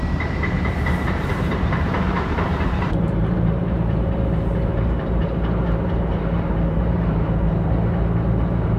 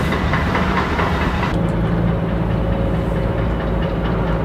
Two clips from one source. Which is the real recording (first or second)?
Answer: second